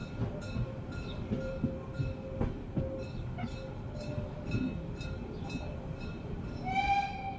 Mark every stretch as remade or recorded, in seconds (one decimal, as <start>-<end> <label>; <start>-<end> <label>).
0.0-7.4 recorded